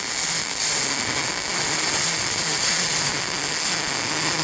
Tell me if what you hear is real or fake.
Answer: real